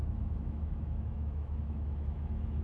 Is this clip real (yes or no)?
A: no